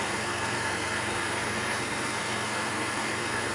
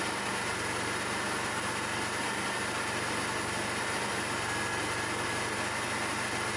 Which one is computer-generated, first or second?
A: first